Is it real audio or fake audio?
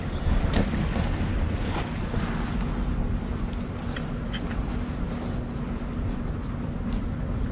real